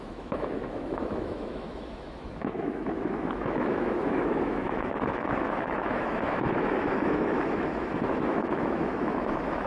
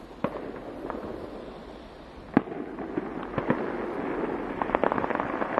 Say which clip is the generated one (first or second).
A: first